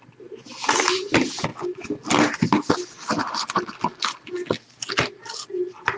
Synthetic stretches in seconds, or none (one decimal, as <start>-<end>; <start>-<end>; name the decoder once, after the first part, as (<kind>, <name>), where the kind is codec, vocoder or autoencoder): none